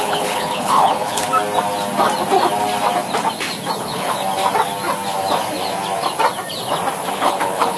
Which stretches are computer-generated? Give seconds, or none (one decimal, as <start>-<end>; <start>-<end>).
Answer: 0.0-1.2; 3.8-4.2; 7.1-7.8